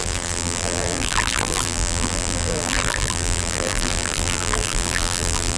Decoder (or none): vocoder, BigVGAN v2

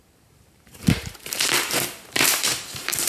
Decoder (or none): vocoder, BigVGAN v2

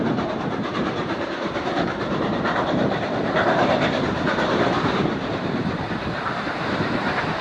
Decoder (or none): vocoder, BigVGAN v2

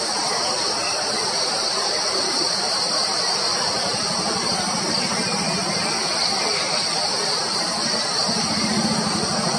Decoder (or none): vocoder, BigVGAN v2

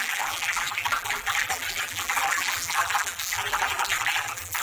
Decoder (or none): vocoder, BigVGAN v2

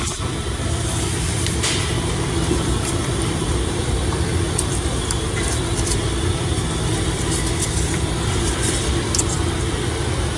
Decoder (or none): vocoder, BigVGAN v2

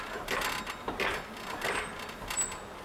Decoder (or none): none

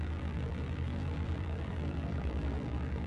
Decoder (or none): vocoder, BigVGAN v2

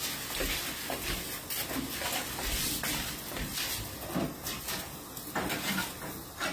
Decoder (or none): none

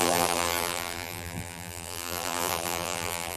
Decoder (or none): vocoder, BigVGAN v2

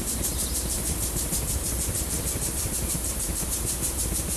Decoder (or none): vocoder, BigVGAN v2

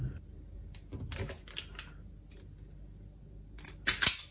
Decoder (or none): none